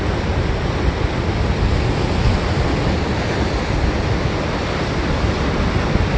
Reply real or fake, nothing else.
real